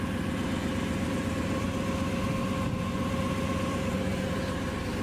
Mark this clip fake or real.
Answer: real